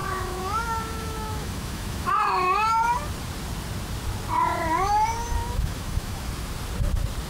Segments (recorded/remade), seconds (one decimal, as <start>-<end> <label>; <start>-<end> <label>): 0.0-2.1 remade; 2.1-5.4 recorded; 5.4-6.3 remade; 6.3-7.3 recorded